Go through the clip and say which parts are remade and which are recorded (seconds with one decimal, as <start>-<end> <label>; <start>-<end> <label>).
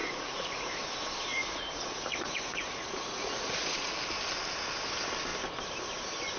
0.0-0.8 remade; 0.8-1.3 recorded; 1.3-3.9 remade; 3.9-6.4 recorded